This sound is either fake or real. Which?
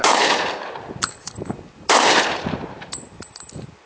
real